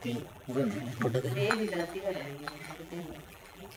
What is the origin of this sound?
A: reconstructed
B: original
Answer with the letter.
A